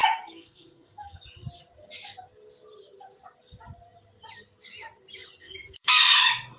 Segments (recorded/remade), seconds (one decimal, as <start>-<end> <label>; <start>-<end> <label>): 0.0-1.2 remade; 1.2-5.4 recorded; 5.4-6.0 remade; 6.0-6.6 recorded